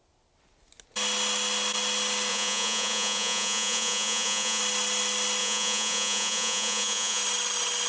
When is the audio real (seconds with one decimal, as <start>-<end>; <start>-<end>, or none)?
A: 0.0-2.3; 4.6-5.4; 7.2-7.9